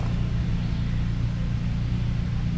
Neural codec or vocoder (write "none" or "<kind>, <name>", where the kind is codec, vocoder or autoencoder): none